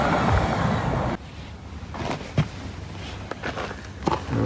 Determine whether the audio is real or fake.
real